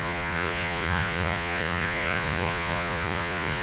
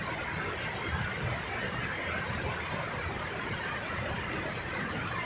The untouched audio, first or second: second